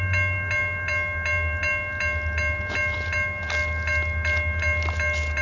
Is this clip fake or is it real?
real